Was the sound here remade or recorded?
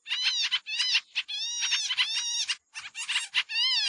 recorded